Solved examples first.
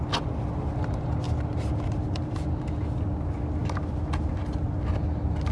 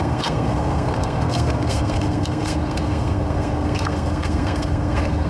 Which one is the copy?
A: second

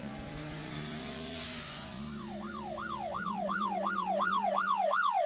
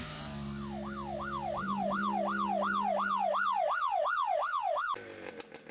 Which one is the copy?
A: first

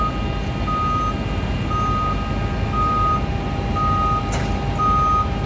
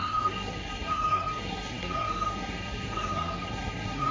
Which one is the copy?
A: second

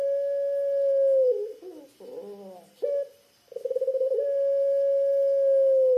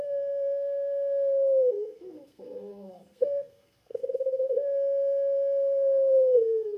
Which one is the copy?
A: second